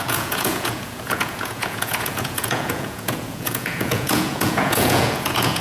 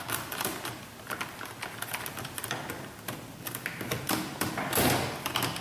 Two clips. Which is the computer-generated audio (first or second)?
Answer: first